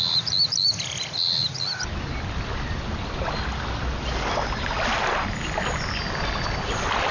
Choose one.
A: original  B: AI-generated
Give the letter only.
A